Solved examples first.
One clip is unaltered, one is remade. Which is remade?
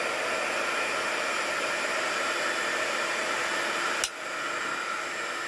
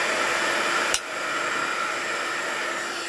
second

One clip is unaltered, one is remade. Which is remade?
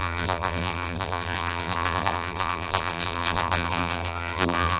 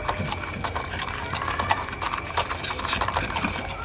first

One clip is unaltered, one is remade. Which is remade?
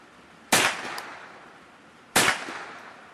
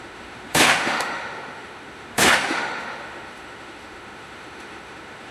second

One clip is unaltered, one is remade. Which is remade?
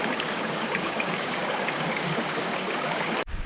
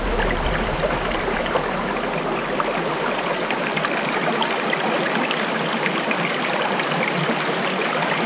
first